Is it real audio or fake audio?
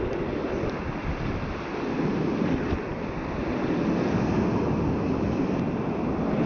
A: real